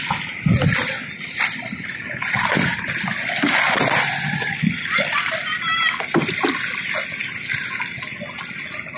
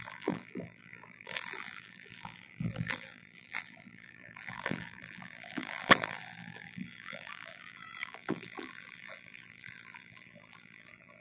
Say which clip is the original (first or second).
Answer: first